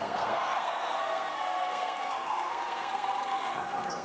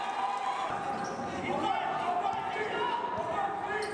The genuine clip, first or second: second